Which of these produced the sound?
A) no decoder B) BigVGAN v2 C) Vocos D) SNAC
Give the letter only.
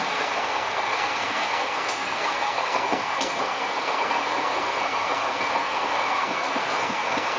D